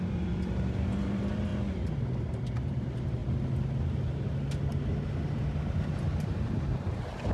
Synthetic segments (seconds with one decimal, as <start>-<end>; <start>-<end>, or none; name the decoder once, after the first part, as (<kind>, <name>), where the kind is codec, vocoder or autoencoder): 0.0-1.5 (vocoder, BigVGAN v2); 2.2-3.2; 5.7-7.3

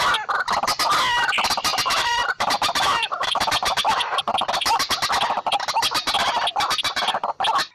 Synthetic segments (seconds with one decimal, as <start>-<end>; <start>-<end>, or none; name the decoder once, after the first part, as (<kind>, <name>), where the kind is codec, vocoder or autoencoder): 1.7-5.1 (vocoder, BigVGAN v2)

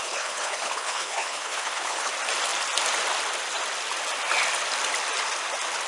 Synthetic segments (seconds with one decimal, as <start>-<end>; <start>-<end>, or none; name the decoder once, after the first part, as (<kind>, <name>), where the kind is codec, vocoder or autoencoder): 0.0-2.1 (codec, HILCodec)

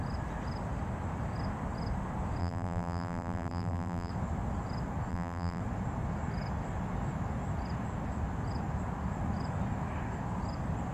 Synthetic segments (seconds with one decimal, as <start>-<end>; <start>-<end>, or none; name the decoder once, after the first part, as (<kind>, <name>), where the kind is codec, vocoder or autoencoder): 2.4-4.1 (vocoder, BigVGAN v2); 5.1-5.6

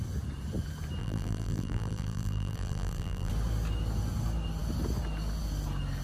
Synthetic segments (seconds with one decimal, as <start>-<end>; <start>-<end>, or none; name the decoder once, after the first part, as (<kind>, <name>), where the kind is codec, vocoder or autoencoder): 1.0-3.3 (vocoder, BigVGAN v2)